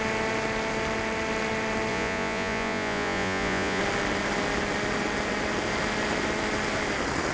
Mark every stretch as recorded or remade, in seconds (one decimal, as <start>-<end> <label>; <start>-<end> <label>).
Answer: 0.0-1.9 recorded; 1.9-3.8 remade; 3.8-7.3 recorded